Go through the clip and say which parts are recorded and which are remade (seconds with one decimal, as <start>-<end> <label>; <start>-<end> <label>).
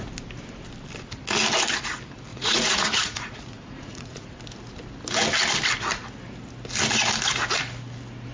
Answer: 0.0-2.3 recorded; 2.3-4.4 remade; 4.4-8.3 recorded